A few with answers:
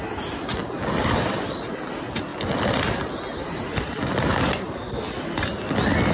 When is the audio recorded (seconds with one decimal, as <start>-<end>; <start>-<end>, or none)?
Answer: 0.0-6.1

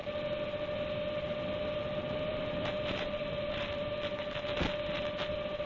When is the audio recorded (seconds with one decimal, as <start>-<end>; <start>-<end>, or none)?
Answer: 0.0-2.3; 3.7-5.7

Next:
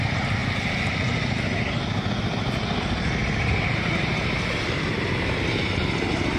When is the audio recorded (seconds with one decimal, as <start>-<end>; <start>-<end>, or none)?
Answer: 0.0-4.0; 5.1-6.4